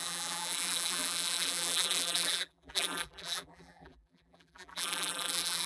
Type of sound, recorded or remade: remade